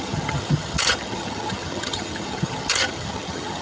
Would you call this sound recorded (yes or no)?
no